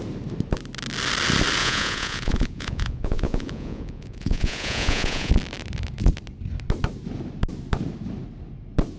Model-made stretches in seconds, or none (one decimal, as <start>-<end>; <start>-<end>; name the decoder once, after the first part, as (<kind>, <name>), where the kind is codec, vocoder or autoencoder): 1.6-5.3 (vocoder, Vocos)